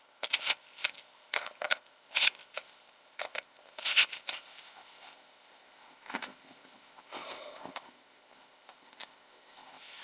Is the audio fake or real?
fake